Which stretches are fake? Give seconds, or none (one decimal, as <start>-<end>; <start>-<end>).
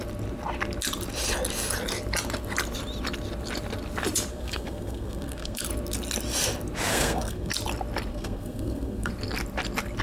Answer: 4.3-5.6; 6.9-7.5; 8.1-9.1